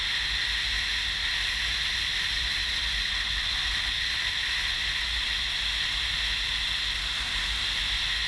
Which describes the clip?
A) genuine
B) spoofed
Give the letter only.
A